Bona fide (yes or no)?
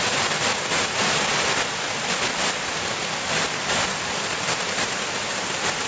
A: yes